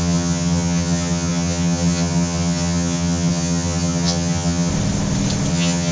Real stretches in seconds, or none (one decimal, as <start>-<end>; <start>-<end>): 4.7-5.5